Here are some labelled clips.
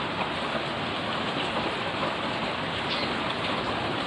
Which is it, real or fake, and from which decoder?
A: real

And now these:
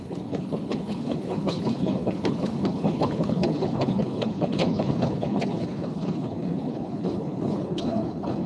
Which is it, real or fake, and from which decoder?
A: fake, codec, HILCodec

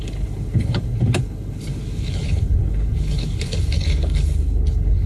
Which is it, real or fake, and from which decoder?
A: fake, codec, HILCodec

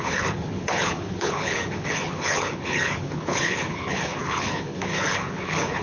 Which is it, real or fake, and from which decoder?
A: fake, codec, HILCodec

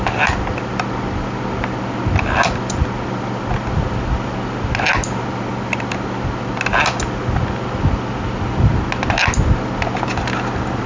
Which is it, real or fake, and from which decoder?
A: real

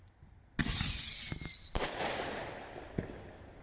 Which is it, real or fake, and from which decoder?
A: real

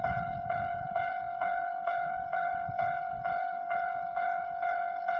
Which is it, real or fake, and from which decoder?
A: fake, codec, HILCodec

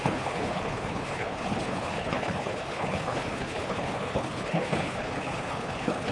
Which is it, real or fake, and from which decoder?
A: fake, codec, HILCodec